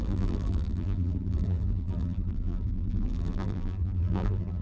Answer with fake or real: fake